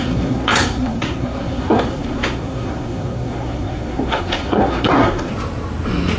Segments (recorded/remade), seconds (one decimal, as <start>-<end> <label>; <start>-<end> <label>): 0.0-5.3 remade; 5.3-6.2 recorded